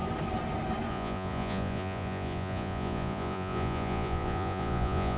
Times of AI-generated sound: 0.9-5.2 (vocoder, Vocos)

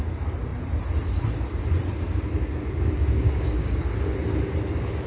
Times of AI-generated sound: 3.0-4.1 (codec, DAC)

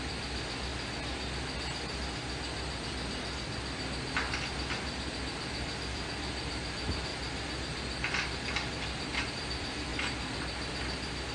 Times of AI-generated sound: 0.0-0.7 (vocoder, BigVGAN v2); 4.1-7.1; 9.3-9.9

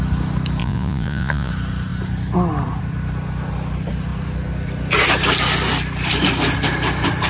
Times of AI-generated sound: 0.6-1.5 (vocoder, Vocos)